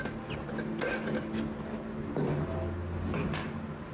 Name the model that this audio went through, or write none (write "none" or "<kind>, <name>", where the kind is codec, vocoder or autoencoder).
none